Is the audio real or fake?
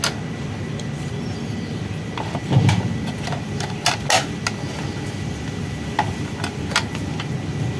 real